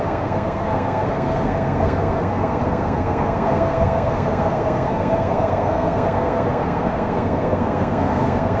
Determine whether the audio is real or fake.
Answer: fake